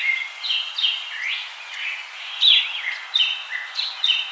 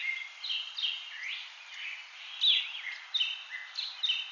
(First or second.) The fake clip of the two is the first